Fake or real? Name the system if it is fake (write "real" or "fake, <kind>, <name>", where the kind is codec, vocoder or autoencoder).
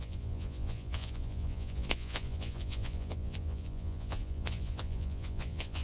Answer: fake, vocoder, Vocos